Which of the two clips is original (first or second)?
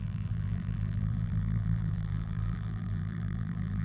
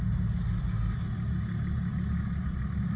second